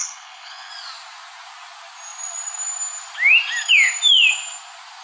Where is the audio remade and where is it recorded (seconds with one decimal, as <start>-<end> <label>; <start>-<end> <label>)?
0.0-0.7 remade; 0.7-5.0 recorded